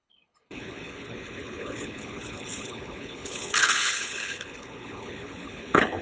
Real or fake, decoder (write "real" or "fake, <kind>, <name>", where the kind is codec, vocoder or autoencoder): fake, codec, HILCodec